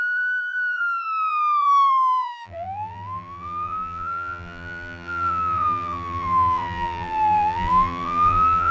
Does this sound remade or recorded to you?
remade